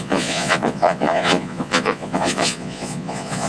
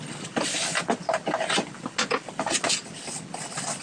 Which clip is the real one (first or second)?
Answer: second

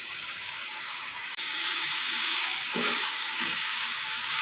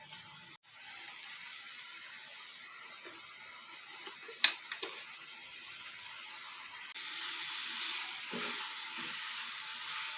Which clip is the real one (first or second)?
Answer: second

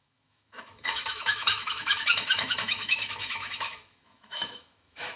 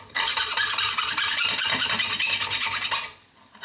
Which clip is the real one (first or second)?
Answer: second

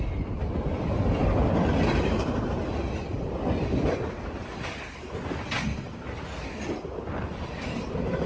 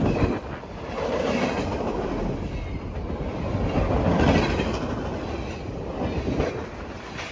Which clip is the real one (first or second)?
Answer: second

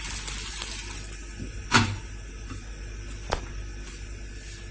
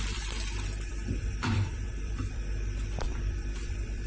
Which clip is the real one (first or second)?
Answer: first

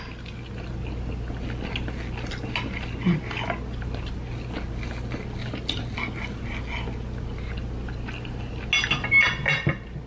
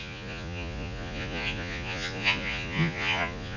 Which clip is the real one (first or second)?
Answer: first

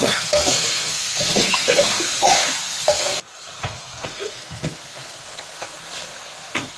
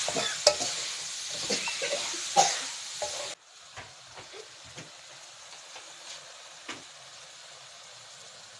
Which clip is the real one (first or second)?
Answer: second